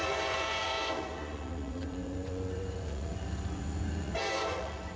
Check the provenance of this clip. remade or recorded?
remade